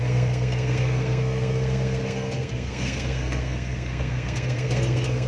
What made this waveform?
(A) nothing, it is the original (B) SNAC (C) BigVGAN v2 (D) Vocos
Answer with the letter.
B